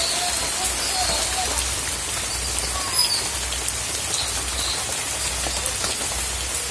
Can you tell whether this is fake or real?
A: real